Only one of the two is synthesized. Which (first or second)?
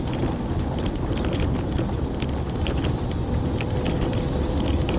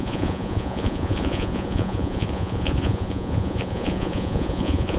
second